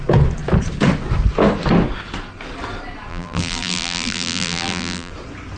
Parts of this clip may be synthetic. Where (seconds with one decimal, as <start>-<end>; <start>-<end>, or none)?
3.1-5.1